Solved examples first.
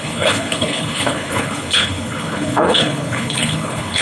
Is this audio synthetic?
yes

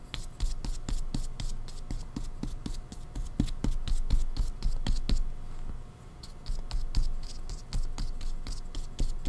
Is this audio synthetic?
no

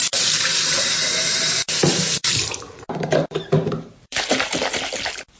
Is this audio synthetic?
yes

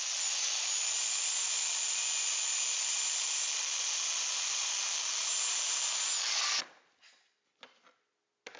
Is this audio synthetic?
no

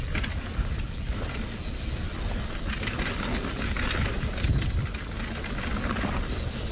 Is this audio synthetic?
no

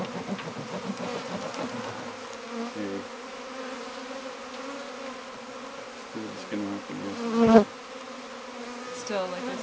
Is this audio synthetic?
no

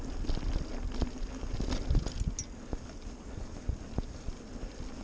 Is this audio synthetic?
no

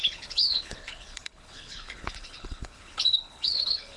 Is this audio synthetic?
yes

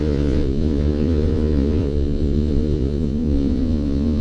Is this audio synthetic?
yes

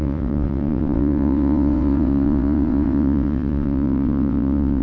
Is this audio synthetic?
yes